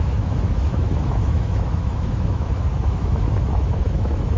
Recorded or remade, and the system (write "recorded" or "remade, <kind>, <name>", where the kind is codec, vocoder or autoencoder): remade, autoencoder, DAC-VAE